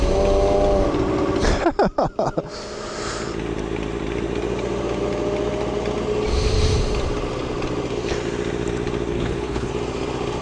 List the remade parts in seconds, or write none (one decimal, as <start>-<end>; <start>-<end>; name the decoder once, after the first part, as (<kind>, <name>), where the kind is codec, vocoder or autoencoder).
9.1-9.7 (codec, HILCodec)

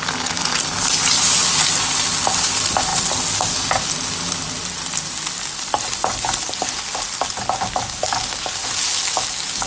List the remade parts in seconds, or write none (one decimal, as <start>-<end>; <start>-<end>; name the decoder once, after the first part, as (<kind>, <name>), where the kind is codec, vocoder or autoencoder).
none